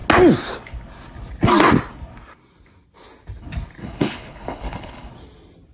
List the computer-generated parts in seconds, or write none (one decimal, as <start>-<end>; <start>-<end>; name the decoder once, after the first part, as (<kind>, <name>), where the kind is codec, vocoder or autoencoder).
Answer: 3.8-5.1 (codec, HILCodec)

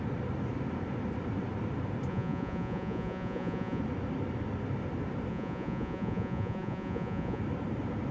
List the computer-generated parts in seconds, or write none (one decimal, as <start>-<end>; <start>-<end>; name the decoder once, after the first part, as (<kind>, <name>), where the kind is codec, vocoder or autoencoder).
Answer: 2.1-3.8 (vocoder, Vocos); 5.3-7.4

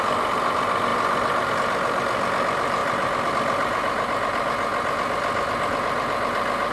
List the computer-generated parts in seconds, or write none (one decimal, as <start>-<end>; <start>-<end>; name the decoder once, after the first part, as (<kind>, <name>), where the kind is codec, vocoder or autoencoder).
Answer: none

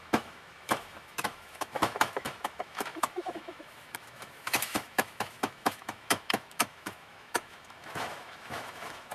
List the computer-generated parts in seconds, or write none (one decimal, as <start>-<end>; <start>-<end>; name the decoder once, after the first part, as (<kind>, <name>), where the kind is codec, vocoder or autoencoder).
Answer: 0.0-9.1 (autoencoder, DAC-VAE)

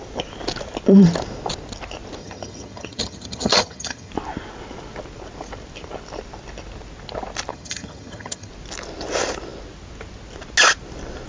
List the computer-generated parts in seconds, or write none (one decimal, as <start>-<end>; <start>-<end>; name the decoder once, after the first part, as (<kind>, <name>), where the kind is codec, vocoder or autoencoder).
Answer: 2.2-4.1 (vocoder, HiFi-GAN); 7.5-8.5

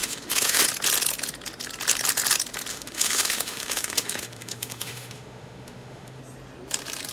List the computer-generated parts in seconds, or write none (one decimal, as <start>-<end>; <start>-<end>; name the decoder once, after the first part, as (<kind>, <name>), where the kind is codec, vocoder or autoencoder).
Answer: 0.0-0.6 (autoencoder, DAC-VAE); 2.7-6.2

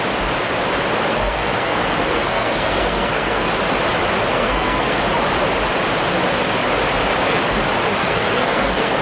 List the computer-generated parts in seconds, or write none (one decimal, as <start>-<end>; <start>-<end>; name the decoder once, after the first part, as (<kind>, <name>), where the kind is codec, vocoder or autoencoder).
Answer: 1.1-3.5 (codec, SNAC); 4.3-5.0; 8.0-9.0